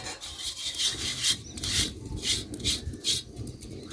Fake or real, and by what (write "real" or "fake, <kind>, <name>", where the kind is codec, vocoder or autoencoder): real